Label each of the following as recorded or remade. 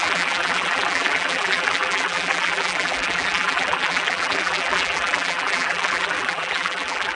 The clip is remade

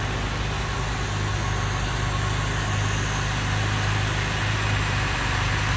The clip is recorded